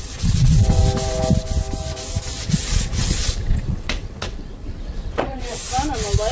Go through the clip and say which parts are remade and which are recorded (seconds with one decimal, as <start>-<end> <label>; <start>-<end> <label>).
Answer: 0.0-0.8 remade; 0.8-2.4 recorded; 2.4-5.6 remade; 5.6-6.3 recorded